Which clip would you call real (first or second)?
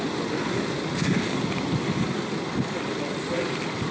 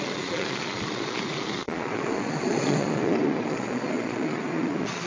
first